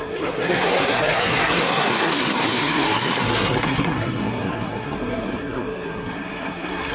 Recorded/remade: remade